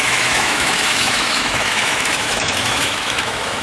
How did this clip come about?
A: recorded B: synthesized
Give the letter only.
B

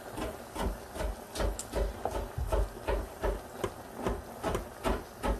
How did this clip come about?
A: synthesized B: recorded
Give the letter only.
B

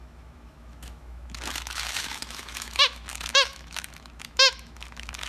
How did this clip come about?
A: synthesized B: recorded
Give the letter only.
A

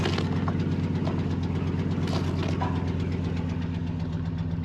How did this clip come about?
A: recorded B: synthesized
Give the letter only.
A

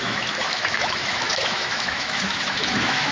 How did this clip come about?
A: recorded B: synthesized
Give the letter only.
B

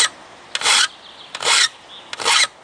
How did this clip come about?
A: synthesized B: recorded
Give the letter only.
B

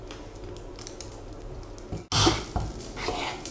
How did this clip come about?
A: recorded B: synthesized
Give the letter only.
A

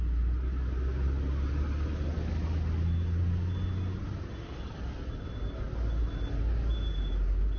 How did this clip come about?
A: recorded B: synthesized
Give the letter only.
A